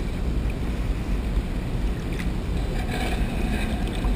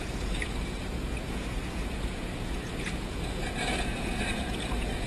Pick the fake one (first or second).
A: second